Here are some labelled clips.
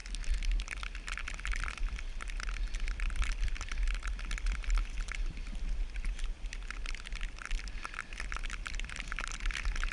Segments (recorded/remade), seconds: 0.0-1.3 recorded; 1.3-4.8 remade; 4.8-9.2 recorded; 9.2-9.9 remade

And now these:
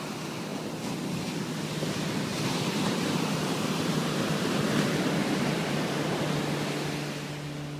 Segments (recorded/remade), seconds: 0.0-2.3 recorded; 2.3-6.4 remade; 6.4-7.8 recorded